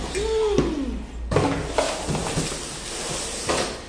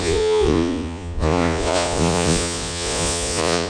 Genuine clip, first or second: first